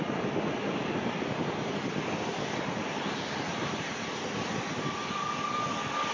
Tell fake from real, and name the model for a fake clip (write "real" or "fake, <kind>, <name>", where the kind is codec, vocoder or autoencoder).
real